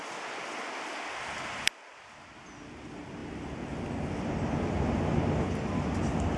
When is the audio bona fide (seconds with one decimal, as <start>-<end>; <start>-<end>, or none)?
0.0-6.4